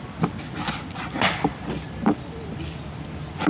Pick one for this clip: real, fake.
fake